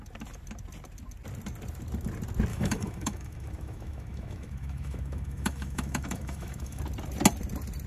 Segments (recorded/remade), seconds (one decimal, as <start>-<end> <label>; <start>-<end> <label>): 0.0-2.5 recorded; 2.5-6.8 remade; 6.8-7.9 recorded